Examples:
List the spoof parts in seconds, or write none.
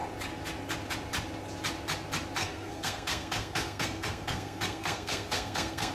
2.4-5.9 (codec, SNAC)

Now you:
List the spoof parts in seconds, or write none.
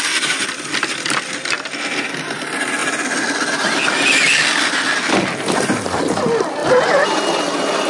6.6-7.2 (vocoder, BigVGAN v2)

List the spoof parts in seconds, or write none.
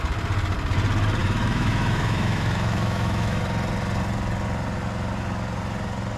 1.2-3.4 (autoencoder, DAC-VAE)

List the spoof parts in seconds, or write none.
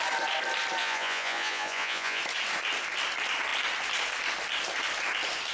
0.8-2.2 (vocoder, Vocos)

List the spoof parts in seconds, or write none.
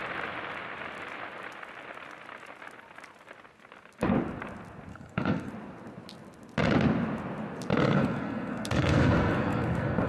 4.9-5.5 (codec, SNAC); 7.7-10.1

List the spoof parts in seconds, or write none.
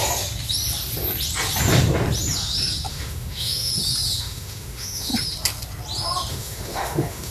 2.9-3.7 (autoencoder, DAC-VAE); 4.2-5.1; 6.3-7.3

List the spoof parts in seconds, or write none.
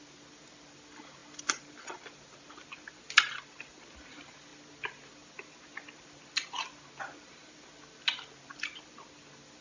none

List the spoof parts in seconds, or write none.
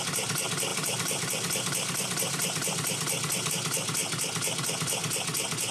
0.7-3.5 (vocoder, BigVGAN v2)